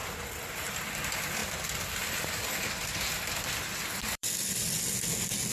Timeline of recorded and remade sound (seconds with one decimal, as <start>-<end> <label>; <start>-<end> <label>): 0.0-0.7 remade; 0.7-1.4 recorded; 1.4-4.7 remade; 4.7-5.5 recorded